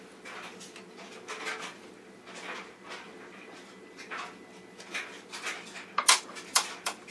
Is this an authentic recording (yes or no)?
yes